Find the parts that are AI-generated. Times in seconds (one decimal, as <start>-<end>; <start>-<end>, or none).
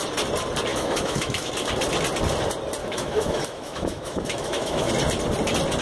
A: 0.7-1.5; 2.8-4.9